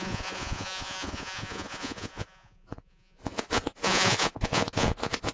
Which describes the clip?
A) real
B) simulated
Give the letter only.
B